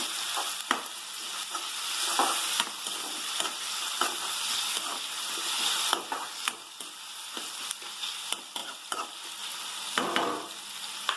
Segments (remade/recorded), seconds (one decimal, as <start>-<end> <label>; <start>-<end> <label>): 0.0-1.2 recorded; 1.2-1.7 remade; 1.7-8.6 recorded; 8.6-9.3 remade; 9.3-11.2 recorded